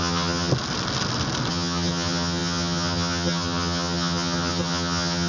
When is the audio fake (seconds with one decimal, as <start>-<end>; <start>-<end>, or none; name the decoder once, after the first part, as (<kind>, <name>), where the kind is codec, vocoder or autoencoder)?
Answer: 0.0-0.5 (vocoder, HiFi-GAN); 1.5-5.3